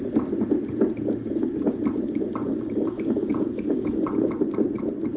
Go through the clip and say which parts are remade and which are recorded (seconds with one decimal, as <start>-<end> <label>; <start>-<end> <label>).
0.0-3.2 recorded; 3.2-3.9 remade; 3.9-5.2 recorded